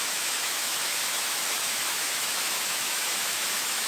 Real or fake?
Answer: fake